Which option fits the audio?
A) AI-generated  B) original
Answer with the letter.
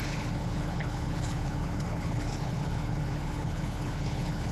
A